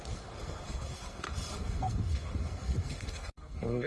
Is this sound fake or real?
fake